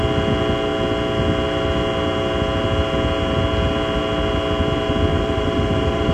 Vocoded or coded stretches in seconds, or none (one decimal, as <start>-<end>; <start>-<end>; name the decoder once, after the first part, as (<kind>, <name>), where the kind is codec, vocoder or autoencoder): 5.1-6.1 (vocoder, BigVGAN v2)